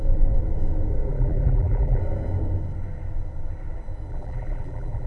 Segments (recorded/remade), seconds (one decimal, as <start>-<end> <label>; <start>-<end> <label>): 0.0-1.1 recorded; 1.1-2.0 remade; 2.0-4.1 recorded; 4.1-5.1 remade